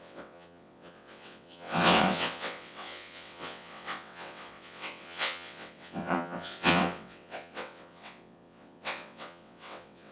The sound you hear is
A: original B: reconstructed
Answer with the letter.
B